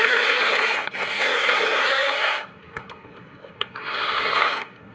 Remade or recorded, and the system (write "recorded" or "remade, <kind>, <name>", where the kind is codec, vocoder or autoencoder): remade, codec, SNAC